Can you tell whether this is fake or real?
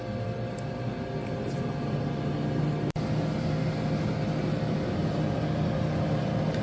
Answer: real